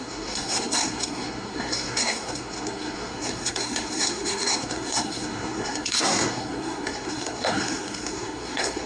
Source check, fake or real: fake